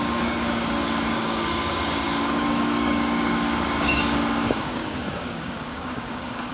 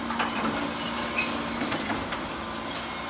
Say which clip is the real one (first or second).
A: second